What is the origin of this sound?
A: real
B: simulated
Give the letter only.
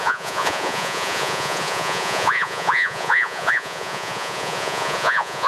B